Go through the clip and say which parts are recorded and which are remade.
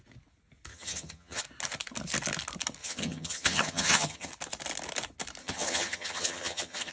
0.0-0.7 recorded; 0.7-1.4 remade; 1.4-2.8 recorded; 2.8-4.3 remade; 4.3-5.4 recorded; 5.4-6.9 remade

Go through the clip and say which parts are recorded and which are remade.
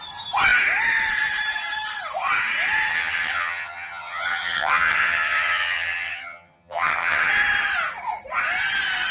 0.0-2.9 recorded; 2.9-7.3 remade; 7.3-9.1 recorded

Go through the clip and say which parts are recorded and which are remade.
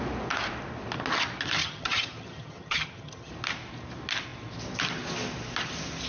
0.0-1.6 recorded; 1.6-3.3 remade; 3.3-6.1 recorded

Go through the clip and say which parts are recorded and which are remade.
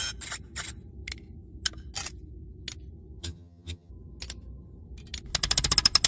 0.0-3.2 recorded; 3.2-3.9 remade; 3.9-6.1 recorded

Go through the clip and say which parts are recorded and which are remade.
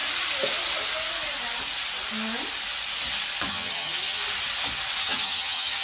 0.0-3.5 recorded; 3.5-4.2 remade; 4.2-5.0 recorded; 5.0-5.8 remade